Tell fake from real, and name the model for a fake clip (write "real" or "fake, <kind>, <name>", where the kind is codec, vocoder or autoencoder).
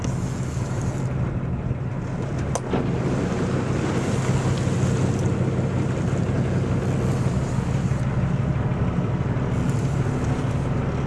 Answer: real